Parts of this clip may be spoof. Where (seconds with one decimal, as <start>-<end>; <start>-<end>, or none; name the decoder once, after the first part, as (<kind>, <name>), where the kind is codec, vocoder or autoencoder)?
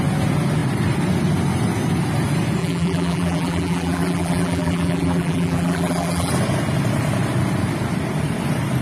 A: 2.6-6.3 (vocoder, BigVGAN v2)